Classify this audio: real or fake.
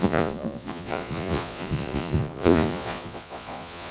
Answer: fake